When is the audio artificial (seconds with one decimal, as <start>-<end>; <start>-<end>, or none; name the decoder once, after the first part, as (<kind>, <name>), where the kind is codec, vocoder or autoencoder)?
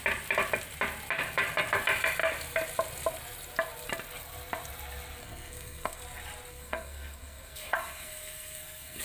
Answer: 5.2-6.0 (codec, SNAC); 6.5-9.0